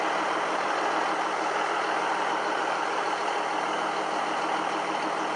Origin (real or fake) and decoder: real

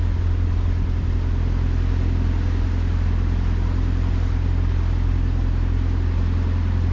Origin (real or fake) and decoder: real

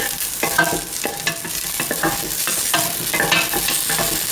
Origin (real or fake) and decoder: real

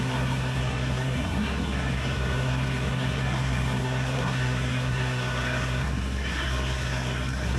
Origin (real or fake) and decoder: fake, codec, SNAC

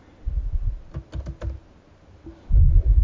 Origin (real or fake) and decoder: real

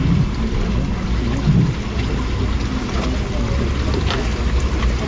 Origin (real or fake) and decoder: real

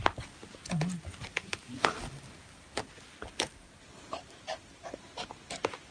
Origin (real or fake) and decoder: real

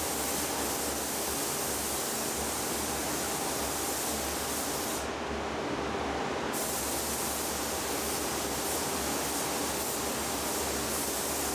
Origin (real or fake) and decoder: real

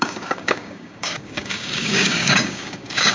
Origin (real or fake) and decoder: fake, codec, DAC